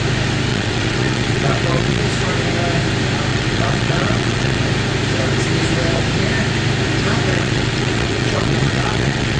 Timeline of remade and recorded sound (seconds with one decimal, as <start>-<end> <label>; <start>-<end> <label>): 0.0-0.5 recorded; 0.5-2.0 remade; 2.0-3.3 recorded; 3.3-4.6 remade; 4.6-7.3 recorded; 7.3-9.4 remade